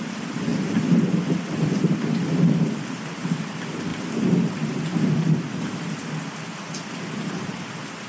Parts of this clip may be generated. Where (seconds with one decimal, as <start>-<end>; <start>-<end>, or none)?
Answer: none